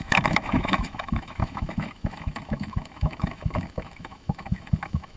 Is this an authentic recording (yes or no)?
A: no